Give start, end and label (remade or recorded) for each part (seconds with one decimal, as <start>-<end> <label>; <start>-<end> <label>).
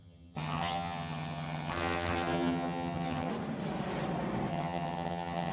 0.0-3.3 remade; 3.3-4.5 recorded; 4.5-5.5 remade